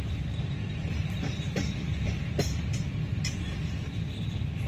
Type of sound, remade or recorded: recorded